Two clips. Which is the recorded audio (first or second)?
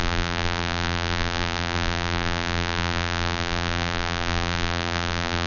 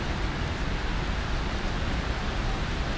second